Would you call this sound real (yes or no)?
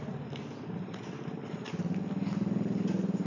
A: yes